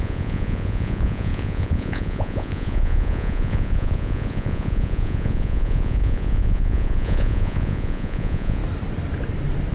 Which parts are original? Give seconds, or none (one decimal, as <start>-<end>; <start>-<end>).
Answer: 8.6-9.7